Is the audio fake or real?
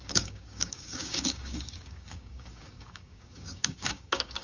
fake